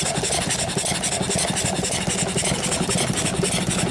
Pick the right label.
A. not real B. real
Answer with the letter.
B